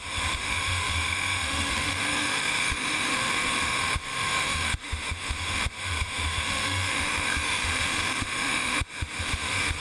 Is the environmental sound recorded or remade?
remade